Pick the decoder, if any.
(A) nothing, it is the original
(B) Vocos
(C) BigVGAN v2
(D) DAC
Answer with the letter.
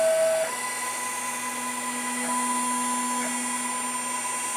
A